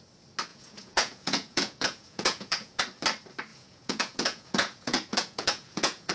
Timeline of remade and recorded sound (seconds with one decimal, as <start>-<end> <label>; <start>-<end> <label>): 0.0-0.5 recorded; 0.5-2.8 remade; 2.8-3.5 recorded; 3.5-6.1 remade